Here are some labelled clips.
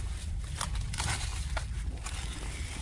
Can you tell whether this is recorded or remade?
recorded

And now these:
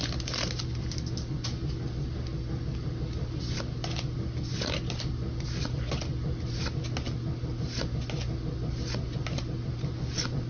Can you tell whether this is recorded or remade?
recorded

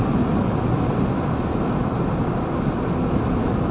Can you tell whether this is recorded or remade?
recorded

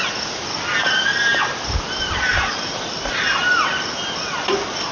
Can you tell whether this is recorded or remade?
recorded